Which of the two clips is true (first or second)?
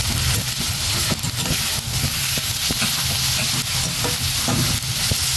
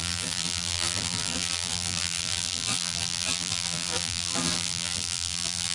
first